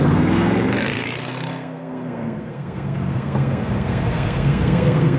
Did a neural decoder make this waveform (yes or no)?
yes